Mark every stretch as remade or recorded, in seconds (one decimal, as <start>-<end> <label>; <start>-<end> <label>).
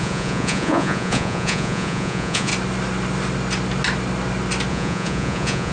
0.0-2.5 remade; 2.5-4.7 recorded; 4.7-5.7 remade